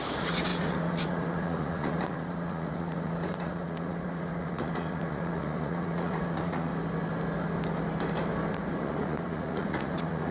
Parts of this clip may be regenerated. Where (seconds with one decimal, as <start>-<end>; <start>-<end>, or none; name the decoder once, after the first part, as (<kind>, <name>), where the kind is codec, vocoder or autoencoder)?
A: 0.0-6.7 (vocoder, Vocos); 8.8-10.3